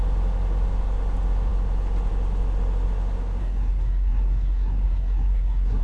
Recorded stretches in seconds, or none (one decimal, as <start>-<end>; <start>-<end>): 0.0-3.4